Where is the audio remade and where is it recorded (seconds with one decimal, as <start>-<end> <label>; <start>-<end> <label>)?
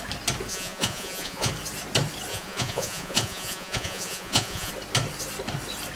0.0-0.5 recorded; 0.5-1.5 remade; 1.5-2.3 recorded; 2.3-4.7 remade; 4.7-6.0 recorded